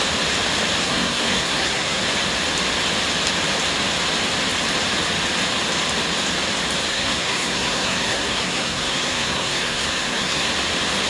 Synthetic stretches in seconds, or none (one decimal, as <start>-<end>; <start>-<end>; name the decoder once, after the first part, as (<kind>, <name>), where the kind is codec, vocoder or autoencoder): 0.8-2.0 (codec, SNAC); 6.9-10.5